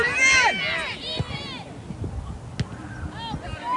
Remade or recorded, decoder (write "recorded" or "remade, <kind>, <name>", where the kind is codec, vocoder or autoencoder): recorded